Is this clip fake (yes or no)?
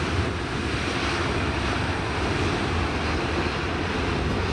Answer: no